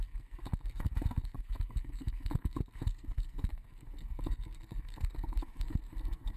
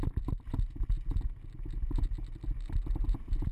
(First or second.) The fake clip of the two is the first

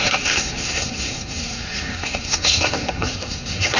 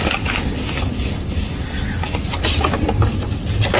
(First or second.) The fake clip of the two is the first